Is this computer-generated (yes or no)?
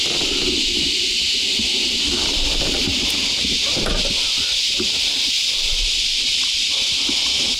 no